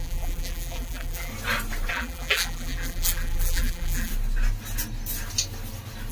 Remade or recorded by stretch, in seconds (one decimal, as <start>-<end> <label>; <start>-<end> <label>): 0.0-1.3 remade; 1.3-1.9 recorded; 1.9-4.1 remade; 4.1-6.1 recorded